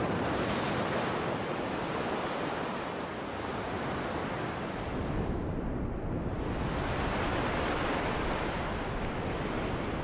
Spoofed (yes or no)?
no